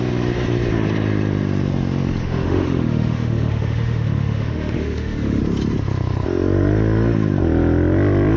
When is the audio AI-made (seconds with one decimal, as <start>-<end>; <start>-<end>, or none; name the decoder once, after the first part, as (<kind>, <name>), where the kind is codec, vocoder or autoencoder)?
2.2-5.4 (autoencoder, DAC-VAE)